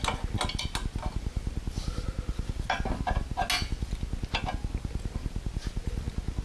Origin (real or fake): real